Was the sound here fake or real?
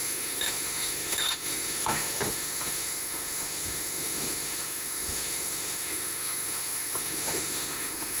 fake